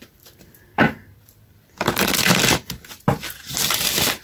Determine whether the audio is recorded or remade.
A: remade